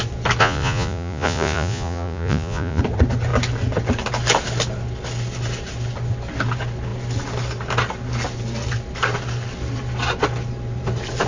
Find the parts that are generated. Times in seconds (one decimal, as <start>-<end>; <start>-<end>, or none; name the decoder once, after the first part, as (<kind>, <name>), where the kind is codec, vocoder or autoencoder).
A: 0.4-2.8 (vocoder, Vocos)